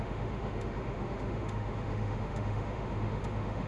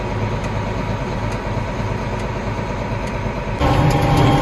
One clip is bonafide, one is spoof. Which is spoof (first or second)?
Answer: first